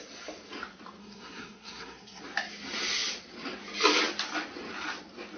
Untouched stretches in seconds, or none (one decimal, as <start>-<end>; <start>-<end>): 0.0-1.0; 2.2-5.4